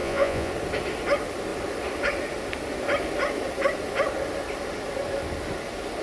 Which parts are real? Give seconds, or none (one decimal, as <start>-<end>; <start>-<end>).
0.5-6.0